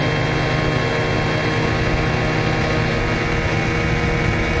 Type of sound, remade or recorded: recorded